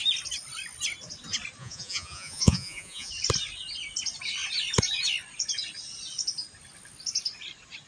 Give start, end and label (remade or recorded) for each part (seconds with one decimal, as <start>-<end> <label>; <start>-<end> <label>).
0.0-1.6 recorded; 1.6-3.1 remade; 3.1-7.9 recorded